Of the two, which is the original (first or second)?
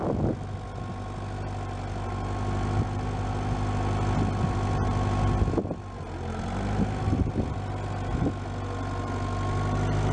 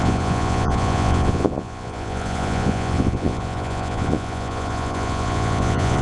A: first